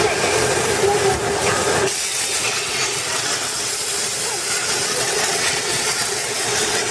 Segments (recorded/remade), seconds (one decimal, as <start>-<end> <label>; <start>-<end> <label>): 0.0-2.1 recorded; 2.1-3.7 remade; 3.7-4.9 recorded; 4.9-6.9 remade